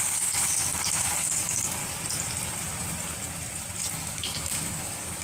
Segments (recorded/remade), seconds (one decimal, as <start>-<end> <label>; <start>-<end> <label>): 0.0-1.8 remade; 1.8-3.9 recorded; 3.9-5.2 remade